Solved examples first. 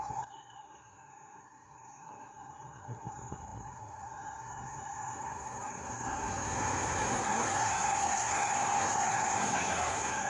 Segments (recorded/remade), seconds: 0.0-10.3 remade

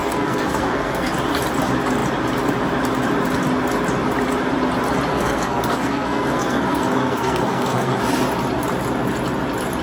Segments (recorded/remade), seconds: 0.0-1.1 remade; 1.1-5.1 recorded; 5.1-8.0 remade; 8.0-9.8 recorded